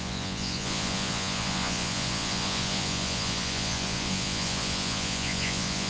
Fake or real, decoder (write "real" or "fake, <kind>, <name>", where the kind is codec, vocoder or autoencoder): fake, vocoder, Vocos